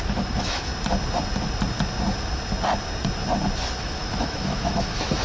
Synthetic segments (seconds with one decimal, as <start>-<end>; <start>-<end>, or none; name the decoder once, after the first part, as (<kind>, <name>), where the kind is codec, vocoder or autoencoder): 0.0-0.7 (autoencoder, DAC-VAE); 3.8-5.2